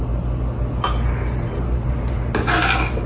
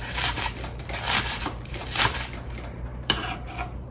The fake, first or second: second